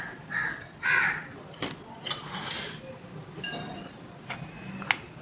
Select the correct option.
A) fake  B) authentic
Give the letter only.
B